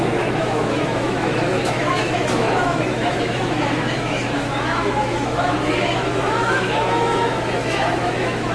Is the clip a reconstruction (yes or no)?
yes